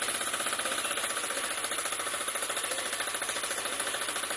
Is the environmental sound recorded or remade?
remade